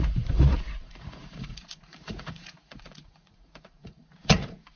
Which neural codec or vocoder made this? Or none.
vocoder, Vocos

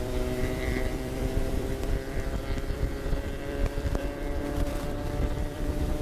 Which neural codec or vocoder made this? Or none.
vocoder, BigVGAN v2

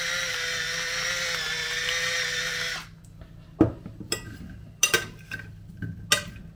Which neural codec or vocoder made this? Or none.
none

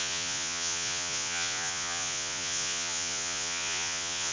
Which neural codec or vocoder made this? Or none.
vocoder, Vocos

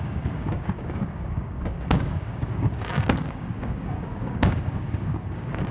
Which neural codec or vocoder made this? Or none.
codec, DAC